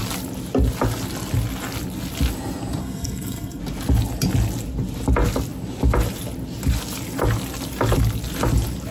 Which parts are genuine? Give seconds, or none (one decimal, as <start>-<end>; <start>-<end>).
0.0-2.8; 3.6-8.9